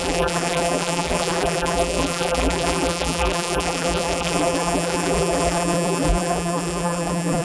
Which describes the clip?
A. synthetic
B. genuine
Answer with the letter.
A